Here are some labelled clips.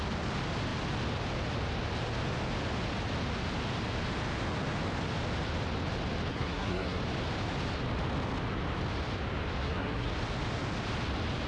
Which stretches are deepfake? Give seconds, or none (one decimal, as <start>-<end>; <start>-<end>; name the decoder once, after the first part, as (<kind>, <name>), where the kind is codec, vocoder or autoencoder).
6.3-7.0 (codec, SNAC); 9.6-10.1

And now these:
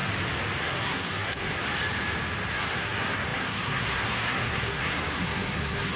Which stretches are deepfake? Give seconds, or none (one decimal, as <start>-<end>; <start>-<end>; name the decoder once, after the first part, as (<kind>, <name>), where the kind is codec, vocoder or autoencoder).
0.6-1.6 (codec, SNAC); 2.5-6.0

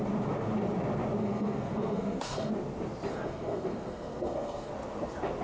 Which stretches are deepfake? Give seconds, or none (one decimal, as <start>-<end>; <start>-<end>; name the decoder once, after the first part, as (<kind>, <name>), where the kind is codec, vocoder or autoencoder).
1.2-2.5 (codec, SNAC); 3.1-4.7